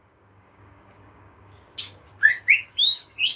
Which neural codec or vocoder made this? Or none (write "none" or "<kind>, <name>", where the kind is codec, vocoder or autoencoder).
codec, DAC